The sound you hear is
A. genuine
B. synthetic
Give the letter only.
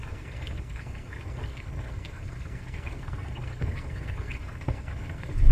B